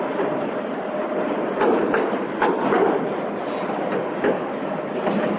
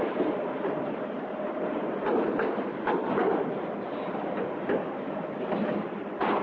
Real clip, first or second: first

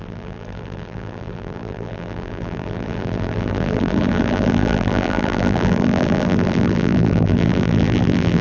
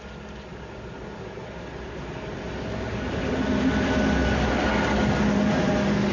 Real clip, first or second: second